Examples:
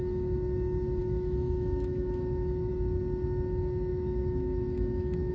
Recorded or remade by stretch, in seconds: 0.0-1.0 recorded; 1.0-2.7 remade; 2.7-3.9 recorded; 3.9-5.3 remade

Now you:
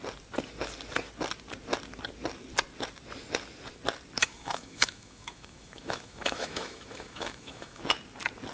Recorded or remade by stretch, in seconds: 0.0-4.2 recorded; 4.2-7.8 remade; 7.8-8.5 recorded